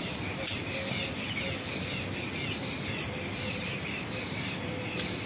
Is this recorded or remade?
recorded